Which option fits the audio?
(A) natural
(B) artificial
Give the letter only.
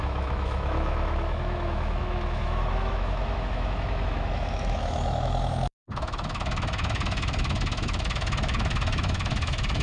B